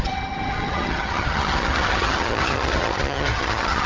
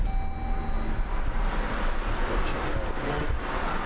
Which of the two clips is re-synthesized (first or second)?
first